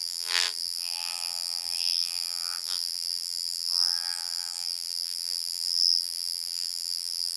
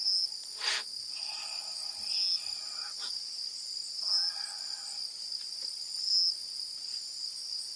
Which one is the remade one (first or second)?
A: first